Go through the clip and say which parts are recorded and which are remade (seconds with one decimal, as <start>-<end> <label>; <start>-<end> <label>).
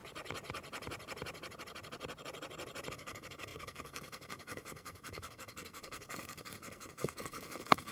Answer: 0.0-2.9 recorded; 2.9-7.9 remade